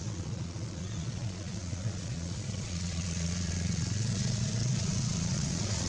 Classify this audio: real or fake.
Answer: fake